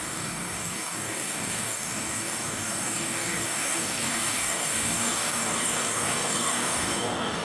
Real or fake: fake